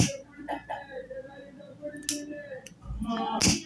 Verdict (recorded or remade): recorded